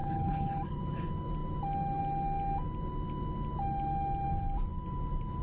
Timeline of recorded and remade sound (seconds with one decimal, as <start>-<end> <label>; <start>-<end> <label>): 0.0-0.8 remade; 0.8-5.4 recorded

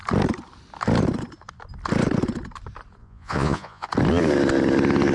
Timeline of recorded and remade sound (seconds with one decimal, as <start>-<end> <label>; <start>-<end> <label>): 0.0-3.0 recorded; 3.0-3.9 remade; 3.9-5.1 recorded

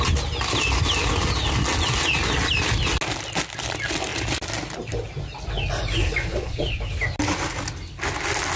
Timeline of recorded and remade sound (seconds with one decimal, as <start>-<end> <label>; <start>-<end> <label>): 0.0-6.3 recorded; 6.3-6.8 remade; 6.8-8.6 recorded